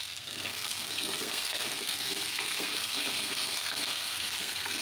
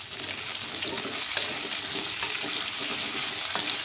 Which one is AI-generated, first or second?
first